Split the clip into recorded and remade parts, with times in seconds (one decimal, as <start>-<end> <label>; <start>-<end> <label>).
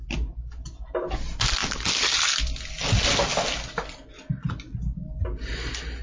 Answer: 0.0-6.0 recorded